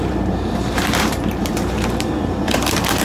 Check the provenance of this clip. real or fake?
fake